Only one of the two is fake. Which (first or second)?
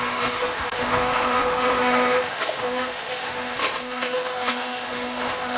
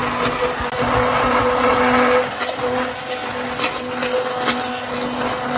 first